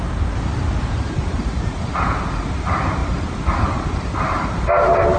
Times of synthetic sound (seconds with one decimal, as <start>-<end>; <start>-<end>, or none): none